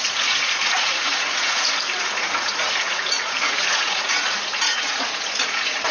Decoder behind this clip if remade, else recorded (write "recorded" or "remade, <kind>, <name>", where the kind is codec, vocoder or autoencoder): remade, vocoder, Vocos